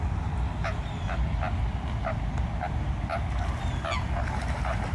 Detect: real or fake real